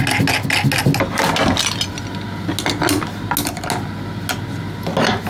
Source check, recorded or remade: recorded